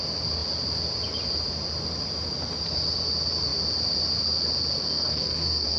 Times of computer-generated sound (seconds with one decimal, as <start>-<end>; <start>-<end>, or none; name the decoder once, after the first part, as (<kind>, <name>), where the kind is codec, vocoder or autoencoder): 4.8-5.8 (codec, SNAC)